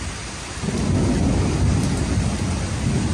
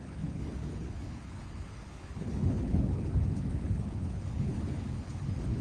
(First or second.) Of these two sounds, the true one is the first